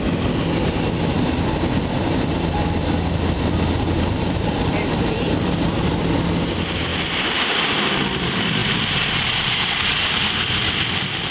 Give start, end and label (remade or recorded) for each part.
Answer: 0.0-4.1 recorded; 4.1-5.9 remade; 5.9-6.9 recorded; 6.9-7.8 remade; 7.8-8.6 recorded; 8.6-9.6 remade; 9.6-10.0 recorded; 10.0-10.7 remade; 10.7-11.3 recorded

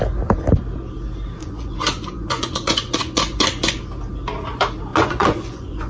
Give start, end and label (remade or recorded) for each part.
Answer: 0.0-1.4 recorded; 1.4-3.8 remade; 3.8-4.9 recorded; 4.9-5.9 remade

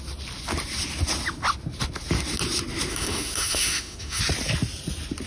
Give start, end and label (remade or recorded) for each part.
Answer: 0.0-2.9 recorded; 2.9-4.2 remade; 4.2-5.3 recorded

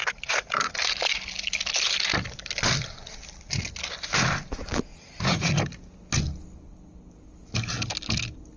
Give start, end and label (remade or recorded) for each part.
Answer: 0.0-0.7 remade; 0.7-4.9 recorded; 4.9-5.5 remade; 5.5-8.6 recorded